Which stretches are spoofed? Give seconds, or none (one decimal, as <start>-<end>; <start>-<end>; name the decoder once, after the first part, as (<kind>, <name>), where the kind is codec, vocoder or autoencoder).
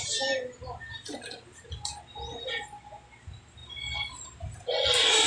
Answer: none